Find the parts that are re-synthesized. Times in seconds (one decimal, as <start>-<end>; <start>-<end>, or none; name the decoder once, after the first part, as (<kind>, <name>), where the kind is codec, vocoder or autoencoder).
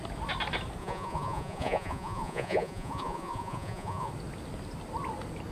0.8-4.1 (vocoder, Vocos)